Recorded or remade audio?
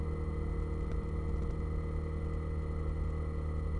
recorded